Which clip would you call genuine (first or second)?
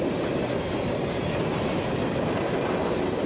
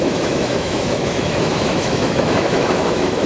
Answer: first